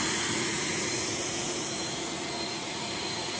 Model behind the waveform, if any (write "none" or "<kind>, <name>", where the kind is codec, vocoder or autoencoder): vocoder, Vocos